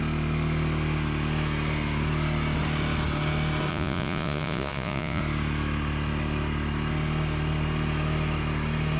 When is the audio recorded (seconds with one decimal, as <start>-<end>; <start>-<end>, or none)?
0.0-3.7; 5.2-9.0